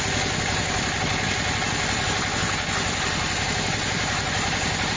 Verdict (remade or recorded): recorded